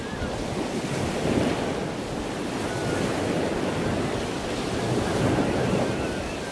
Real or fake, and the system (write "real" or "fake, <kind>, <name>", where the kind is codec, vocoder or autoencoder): real